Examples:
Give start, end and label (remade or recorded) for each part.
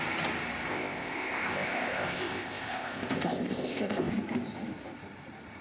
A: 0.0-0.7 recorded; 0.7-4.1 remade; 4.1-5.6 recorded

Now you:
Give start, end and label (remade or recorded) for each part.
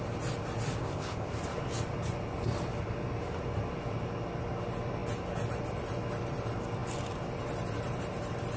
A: 0.0-0.8 recorded; 0.8-1.3 remade; 1.3-8.6 recorded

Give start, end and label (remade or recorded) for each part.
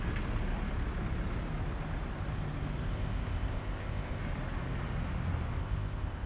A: 0.0-2.8 recorded; 2.8-4.2 remade; 4.2-5.6 recorded; 5.6-6.3 remade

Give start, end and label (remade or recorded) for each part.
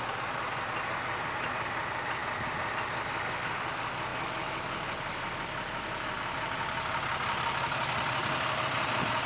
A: 0.0-9.3 recorded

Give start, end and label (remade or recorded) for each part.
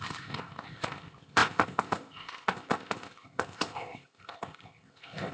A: 0.0-5.3 remade